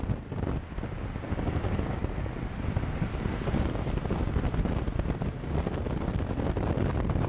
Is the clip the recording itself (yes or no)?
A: yes